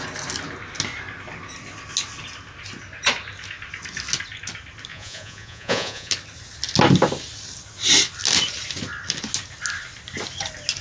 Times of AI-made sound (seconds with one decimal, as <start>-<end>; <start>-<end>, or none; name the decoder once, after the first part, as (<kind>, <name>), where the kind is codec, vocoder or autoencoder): 4.9-6.1 (vocoder, Vocos)